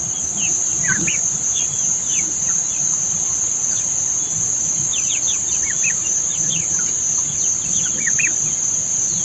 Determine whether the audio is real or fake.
real